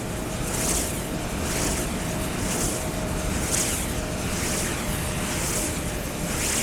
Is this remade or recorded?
recorded